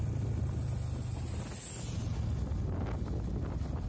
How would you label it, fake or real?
real